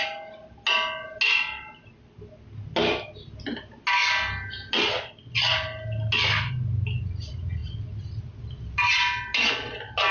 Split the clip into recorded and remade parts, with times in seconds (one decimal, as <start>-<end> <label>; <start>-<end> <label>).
0.0-10.1 recorded